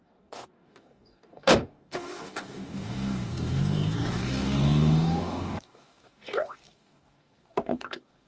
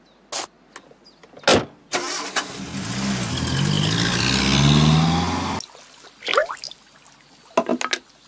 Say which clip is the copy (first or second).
first